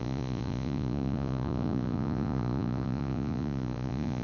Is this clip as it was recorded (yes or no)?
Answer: no